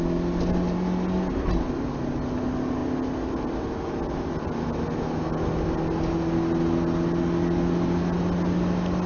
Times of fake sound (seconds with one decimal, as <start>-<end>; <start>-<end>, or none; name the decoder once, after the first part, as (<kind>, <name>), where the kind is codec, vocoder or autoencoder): none